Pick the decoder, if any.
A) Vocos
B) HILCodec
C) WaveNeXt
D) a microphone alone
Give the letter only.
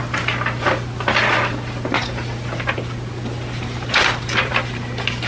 D